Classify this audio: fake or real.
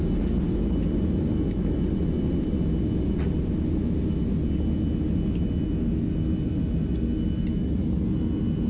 real